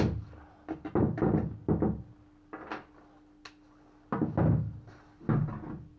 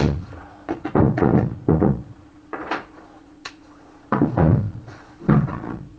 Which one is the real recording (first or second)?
first